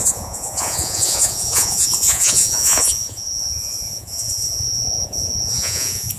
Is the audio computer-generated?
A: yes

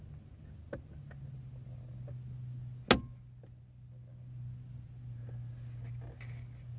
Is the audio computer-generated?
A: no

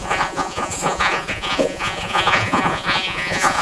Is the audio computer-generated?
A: yes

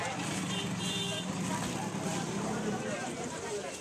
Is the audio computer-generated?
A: no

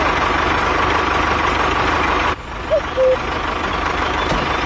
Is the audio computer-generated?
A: no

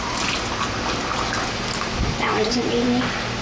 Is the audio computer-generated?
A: no